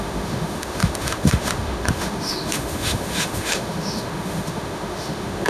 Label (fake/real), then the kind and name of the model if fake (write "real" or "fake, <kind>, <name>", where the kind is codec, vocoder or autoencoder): fake, autoencoder, DAC-VAE